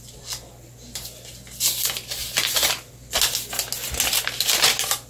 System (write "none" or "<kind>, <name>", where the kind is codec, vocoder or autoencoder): none